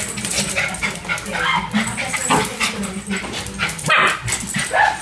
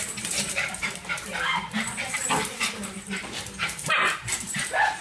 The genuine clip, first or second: first